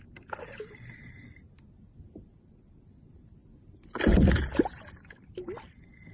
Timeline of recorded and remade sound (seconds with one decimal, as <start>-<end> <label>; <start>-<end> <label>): 0.0-6.1 recorded